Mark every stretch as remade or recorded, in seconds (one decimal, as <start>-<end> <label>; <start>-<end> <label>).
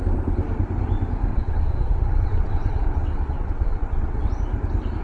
0.0-1.3 recorded; 1.3-4.3 remade; 4.3-5.0 recorded